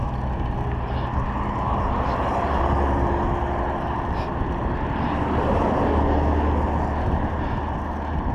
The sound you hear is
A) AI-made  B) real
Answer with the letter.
B